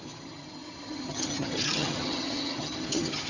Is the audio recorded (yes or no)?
no